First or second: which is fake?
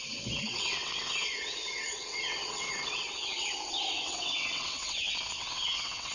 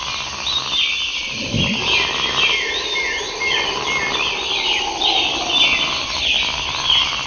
first